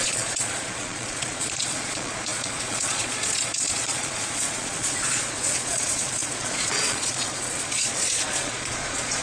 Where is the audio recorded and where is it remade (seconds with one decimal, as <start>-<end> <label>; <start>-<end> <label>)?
0.0-9.2 remade